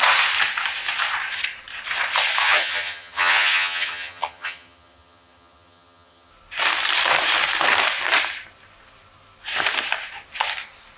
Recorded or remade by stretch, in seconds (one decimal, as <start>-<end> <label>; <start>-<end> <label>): 0.0-2.4 recorded; 2.4-6.3 remade; 6.3-11.0 recorded